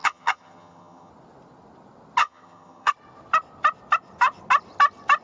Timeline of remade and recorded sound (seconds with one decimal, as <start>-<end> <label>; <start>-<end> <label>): 0.0-1.1 remade; 1.1-2.2 recorded; 2.2-2.9 remade; 2.9-5.2 recorded